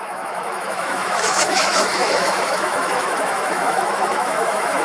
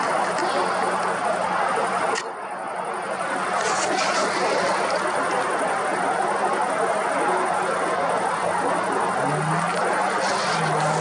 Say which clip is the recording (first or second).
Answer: second